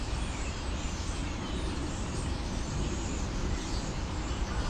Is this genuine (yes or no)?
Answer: no